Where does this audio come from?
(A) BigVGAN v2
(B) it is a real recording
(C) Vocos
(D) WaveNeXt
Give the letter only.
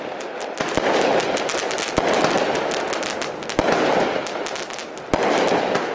B